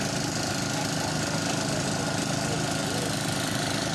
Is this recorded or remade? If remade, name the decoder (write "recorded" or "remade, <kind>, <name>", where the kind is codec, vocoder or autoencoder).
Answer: recorded